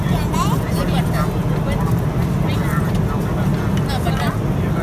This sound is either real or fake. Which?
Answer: real